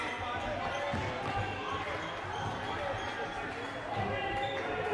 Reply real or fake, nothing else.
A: real